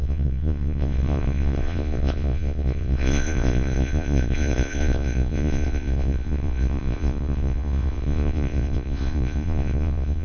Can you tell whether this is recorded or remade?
remade